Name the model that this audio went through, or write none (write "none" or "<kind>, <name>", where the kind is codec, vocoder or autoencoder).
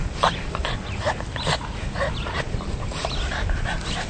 none